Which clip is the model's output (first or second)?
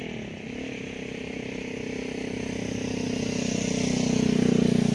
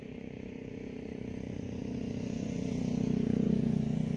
second